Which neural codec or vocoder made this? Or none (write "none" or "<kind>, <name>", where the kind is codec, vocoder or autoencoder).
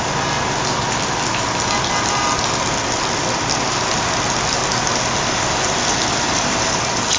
none